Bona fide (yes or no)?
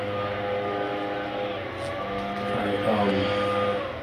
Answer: yes